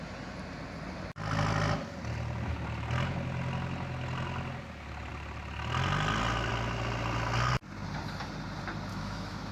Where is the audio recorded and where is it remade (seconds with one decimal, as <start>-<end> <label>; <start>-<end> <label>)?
0.0-8.9 recorded; 8.9-9.5 remade